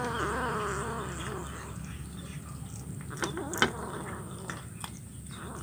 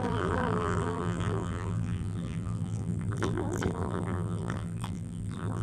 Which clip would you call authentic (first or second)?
first